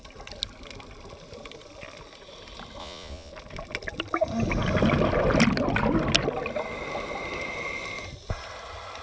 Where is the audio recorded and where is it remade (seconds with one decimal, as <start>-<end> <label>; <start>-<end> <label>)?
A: 0.0-2.8 recorded; 2.8-3.3 remade; 3.3-9.0 recorded